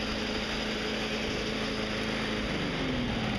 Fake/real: real